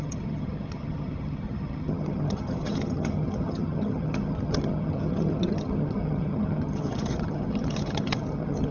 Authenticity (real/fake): fake